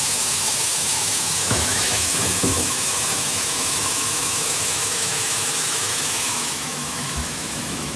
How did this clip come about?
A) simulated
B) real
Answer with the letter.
A